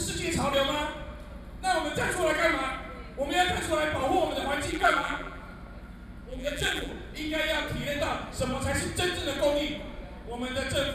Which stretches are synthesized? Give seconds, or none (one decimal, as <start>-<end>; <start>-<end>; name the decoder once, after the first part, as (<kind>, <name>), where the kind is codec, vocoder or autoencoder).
4.7-5.4 (vocoder, BigVGAN v2); 6.3-6.9